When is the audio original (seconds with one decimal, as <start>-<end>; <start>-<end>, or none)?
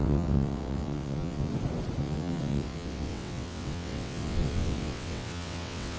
1.5-2.0